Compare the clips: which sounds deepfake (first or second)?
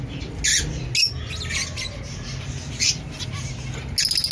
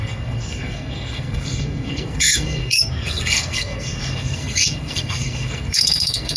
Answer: second